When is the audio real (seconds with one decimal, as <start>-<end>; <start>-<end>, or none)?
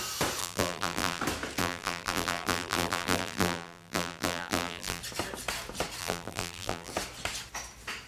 0.0-0.4; 1.2-1.6; 5.0-6.0; 6.9-8.1